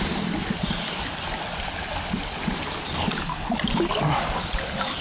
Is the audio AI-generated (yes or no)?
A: no